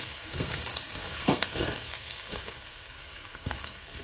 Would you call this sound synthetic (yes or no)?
yes